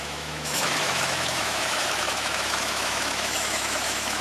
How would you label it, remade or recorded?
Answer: remade